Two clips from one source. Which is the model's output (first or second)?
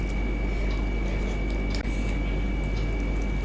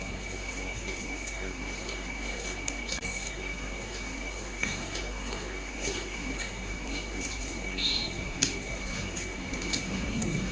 second